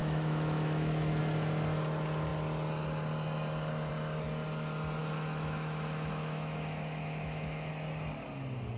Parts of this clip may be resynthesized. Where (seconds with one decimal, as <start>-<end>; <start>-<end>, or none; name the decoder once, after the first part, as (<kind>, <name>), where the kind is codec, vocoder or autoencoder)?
0.0-1.2 (autoencoder, DAC-VAE); 5.0-7.7